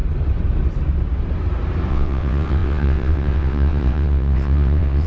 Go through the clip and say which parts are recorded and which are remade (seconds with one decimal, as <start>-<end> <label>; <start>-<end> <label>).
0.0-1.9 recorded; 1.9-5.1 remade